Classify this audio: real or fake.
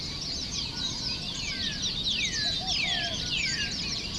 real